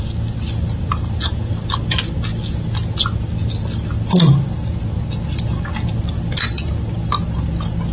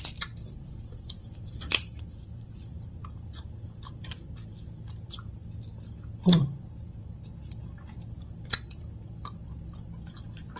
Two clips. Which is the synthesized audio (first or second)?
second